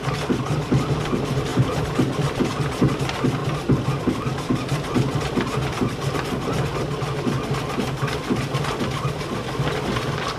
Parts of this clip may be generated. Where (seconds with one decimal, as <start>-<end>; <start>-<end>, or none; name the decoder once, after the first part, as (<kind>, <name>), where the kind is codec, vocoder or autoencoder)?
1.5-2.4 (vocoder, BigVGAN v2)